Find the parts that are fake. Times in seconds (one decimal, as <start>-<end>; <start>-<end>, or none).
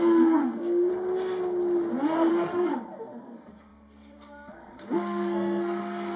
0.0-0.9; 2.3-2.7; 3.2-6.2